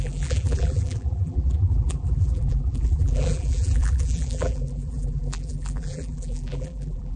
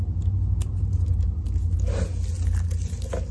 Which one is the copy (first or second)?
first